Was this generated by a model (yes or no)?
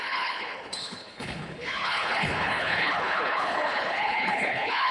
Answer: yes